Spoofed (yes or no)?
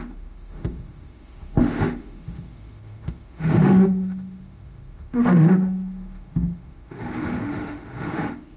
yes